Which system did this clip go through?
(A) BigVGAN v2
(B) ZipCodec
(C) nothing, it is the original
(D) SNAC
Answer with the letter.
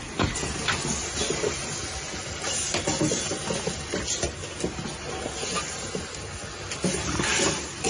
C